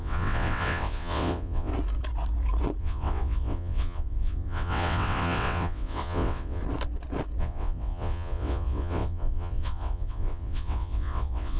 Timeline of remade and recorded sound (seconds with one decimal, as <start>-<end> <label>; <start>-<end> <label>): 0.0-1.7 remade; 1.7-2.8 recorded; 2.8-6.6 remade; 6.6-7.4 recorded; 7.4-11.6 remade